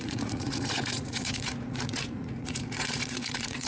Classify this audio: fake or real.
fake